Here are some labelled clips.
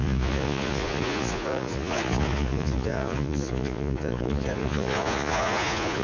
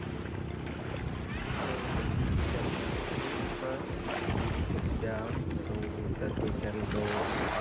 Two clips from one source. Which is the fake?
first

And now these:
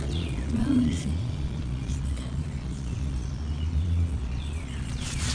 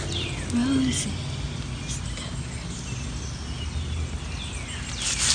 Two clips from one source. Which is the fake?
first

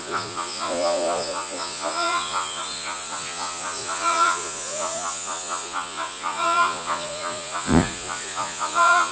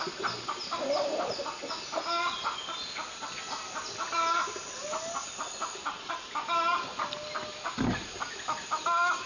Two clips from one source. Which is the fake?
first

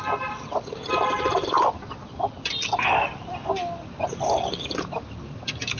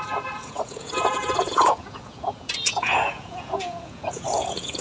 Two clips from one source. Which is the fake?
second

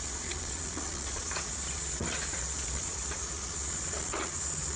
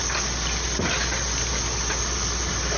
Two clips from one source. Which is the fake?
first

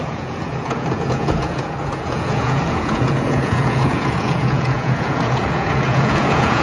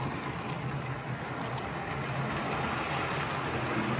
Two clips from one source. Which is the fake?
first